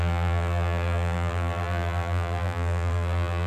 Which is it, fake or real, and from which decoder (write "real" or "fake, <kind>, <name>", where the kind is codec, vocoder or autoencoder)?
fake, vocoder, BigVGAN v2